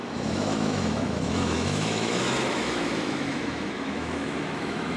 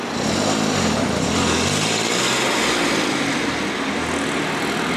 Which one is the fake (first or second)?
first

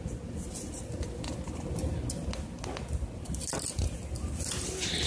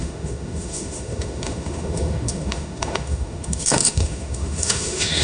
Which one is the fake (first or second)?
second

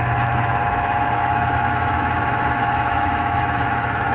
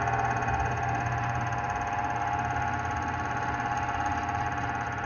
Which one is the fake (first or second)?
first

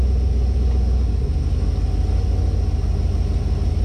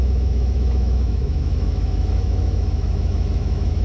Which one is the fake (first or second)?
second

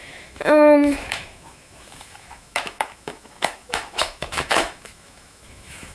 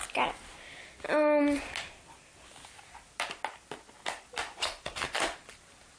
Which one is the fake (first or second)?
first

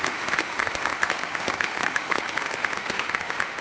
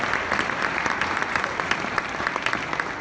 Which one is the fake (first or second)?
first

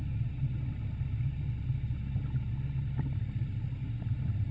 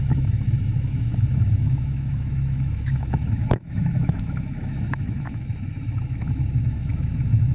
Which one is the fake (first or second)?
second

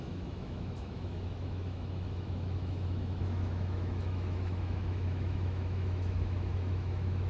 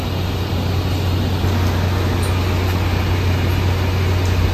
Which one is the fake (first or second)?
first